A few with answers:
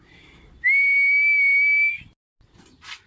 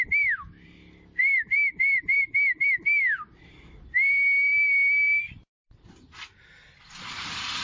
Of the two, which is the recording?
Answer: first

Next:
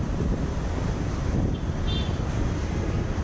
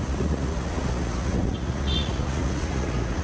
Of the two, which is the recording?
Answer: first